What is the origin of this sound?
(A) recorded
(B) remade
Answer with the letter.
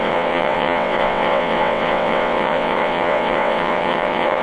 B